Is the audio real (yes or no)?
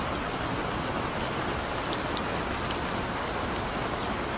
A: yes